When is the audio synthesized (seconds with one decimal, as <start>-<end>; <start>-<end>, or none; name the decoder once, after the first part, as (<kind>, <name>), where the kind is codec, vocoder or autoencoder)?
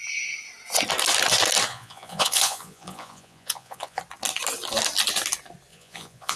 1.7-4.0 (vocoder, Vocos); 5.7-6.4